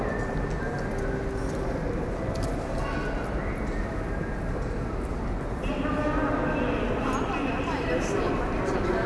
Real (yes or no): yes